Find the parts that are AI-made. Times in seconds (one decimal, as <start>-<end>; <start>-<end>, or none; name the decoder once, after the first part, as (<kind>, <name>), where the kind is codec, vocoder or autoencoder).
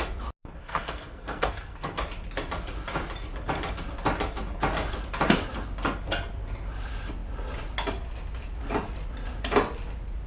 0.6-2.0 (codec, SNAC)